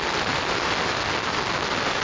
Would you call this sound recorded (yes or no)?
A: yes